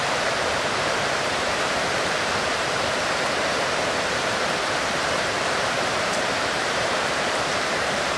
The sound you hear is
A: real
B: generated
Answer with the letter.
B